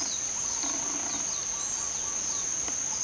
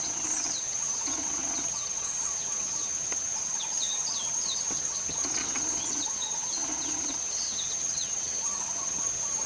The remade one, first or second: second